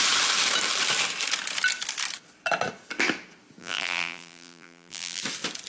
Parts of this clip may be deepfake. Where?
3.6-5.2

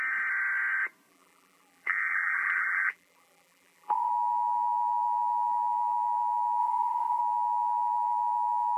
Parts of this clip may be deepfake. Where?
1.1-4.1; 6.6-7.2

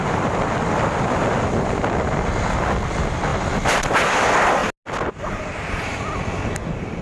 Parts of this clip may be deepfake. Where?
0.0-4.6; 5.2-7.0

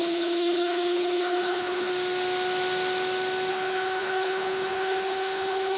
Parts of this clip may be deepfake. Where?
0.0-1.9; 3.5-5.8